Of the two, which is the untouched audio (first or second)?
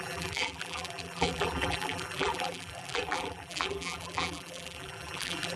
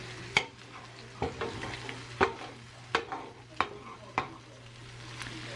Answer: second